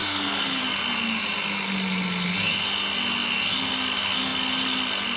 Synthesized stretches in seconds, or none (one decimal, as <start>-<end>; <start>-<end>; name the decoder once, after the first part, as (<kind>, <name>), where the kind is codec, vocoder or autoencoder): 0.0-0.6 (codec, SNAC)